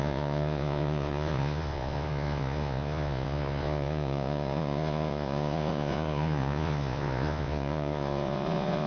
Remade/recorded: remade